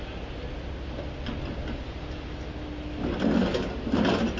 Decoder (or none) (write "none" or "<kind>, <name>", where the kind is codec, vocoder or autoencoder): none